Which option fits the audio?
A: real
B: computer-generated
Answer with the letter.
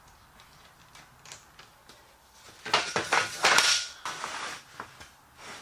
A